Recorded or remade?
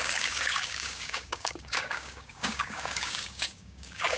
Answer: remade